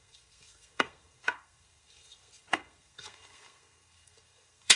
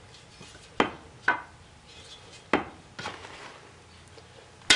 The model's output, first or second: first